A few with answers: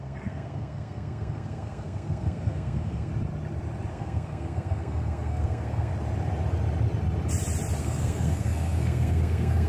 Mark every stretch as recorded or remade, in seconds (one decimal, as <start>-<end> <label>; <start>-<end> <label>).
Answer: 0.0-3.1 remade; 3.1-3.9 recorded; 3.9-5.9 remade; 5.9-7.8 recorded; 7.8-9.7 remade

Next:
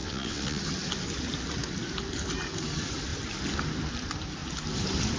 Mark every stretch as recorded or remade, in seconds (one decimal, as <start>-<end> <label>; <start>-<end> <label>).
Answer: 0.0-0.6 remade; 0.6-5.2 recorded

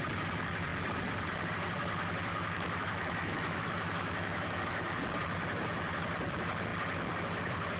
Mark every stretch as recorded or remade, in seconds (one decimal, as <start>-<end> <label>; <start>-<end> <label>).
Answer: 0.0-2.3 recorded; 2.3-4.6 remade; 4.6-7.8 recorded

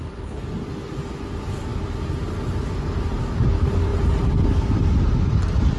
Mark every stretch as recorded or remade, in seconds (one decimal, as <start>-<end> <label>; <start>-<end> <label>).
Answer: 0.0-5.8 recorded